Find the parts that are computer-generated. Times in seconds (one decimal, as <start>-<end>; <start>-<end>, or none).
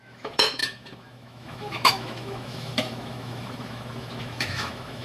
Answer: 0.0-5.0